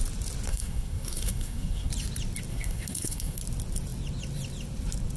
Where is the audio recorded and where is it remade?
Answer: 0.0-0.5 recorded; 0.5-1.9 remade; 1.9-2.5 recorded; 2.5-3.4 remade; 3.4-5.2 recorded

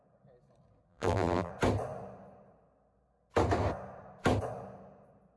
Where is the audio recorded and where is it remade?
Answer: 0.0-0.9 recorded; 0.9-1.5 remade; 1.5-5.4 recorded

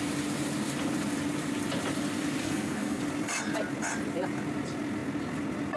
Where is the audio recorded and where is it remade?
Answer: 0.0-2.4 recorded; 2.4-3.0 remade; 3.0-5.8 recorded

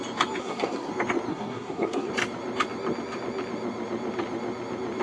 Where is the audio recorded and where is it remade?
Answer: 0.0-0.4 recorded; 0.4-0.9 remade; 0.9-1.3 recorded; 1.3-2.1 remade; 2.1-5.0 recorded

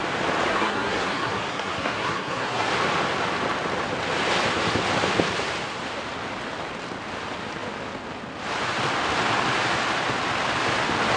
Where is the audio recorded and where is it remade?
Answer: 0.0-0.5 recorded; 0.5-2.7 remade; 2.7-11.2 recorded